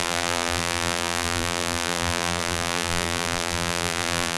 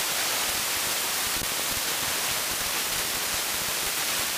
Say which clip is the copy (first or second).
first